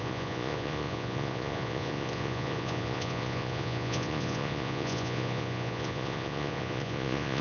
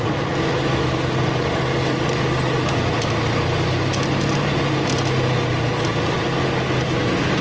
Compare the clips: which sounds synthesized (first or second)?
first